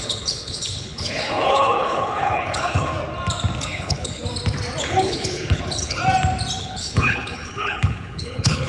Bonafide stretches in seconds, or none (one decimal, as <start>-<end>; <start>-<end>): 2.9-3.6; 4.2-4.8; 6.0-6.6